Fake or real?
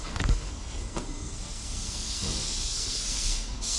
fake